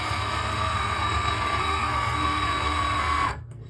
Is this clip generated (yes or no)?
yes